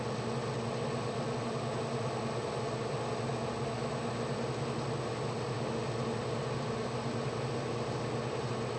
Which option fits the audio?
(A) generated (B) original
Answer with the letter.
B